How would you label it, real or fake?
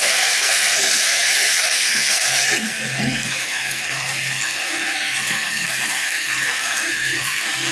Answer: fake